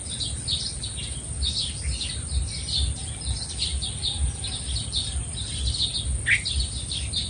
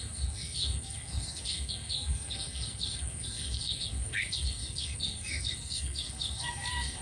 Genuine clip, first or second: first